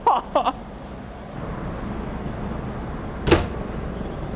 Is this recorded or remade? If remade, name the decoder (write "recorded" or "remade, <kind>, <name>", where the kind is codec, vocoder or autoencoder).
recorded